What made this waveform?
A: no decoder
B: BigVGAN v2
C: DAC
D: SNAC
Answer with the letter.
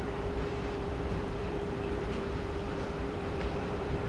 B